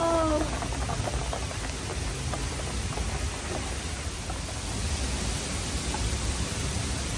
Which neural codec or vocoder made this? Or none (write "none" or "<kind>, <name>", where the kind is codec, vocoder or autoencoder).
none